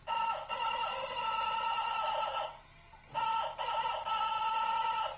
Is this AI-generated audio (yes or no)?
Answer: no